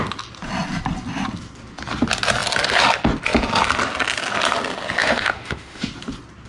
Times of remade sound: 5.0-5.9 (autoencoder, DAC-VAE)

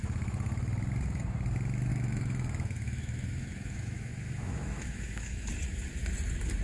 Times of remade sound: 1.9-5.5 (autoencoder, DAC-VAE)

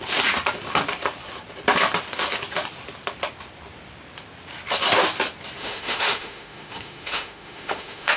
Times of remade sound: 5.6-8.2 (autoencoder, DAC-VAE)

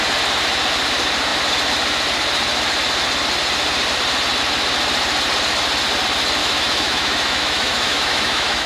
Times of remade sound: 6.4-8.7 (autoencoder, DAC-VAE)